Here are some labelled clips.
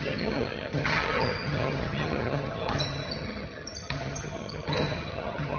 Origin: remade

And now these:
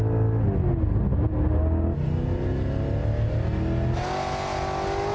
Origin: recorded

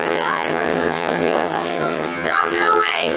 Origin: remade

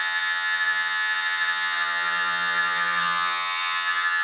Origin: remade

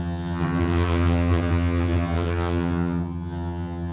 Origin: remade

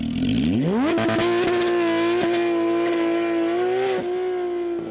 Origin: recorded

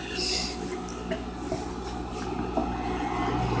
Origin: recorded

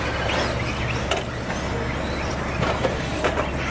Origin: recorded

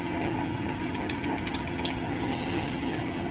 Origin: remade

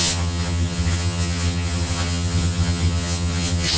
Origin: remade